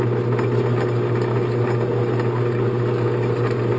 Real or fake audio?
real